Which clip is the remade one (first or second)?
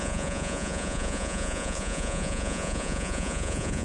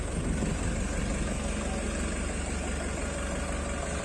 first